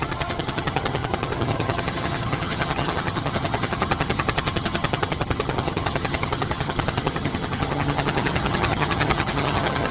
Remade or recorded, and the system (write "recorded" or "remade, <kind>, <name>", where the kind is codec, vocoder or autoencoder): remade, vocoder, HiFi-GAN